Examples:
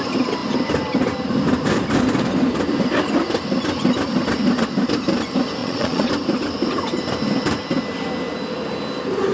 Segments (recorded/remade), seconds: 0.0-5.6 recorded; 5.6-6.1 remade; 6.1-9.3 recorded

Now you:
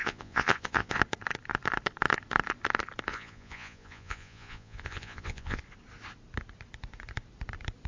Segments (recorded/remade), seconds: 0.0-1.0 remade; 1.0-3.1 recorded; 3.1-5.6 remade; 5.6-7.9 recorded